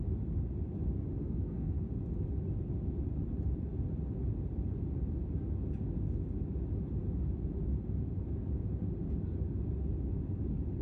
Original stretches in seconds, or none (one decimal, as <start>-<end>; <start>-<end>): 0.0-1.2; 1.8-10.8